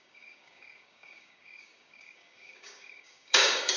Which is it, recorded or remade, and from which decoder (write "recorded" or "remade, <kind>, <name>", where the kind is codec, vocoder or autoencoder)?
remade, codec, DAC